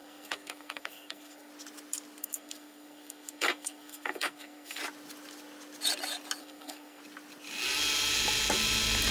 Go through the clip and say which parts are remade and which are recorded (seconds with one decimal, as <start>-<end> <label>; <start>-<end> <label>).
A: 0.0-1.5 remade; 1.5-2.2 recorded; 2.2-4.8 remade; 4.8-6.4 recorded; 6.4-7.0 remade; 7.0-9.1 recorded

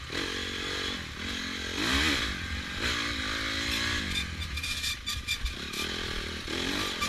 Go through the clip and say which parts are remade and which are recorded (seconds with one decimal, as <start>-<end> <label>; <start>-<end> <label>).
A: 0.0-7.1 recorded

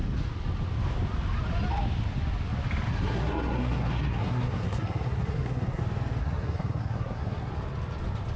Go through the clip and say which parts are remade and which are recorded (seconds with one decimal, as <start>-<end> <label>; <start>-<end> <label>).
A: 0.0-2.9 recorded; 2.9-5.8 remade; 5.8-6.2 recorded; 6.2-7.5 remade; 7.5-8.4 recorded